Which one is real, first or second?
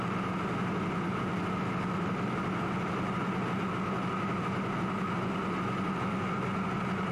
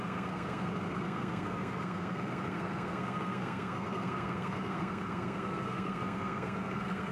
first